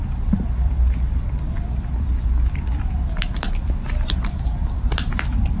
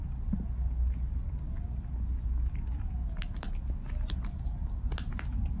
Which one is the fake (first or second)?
first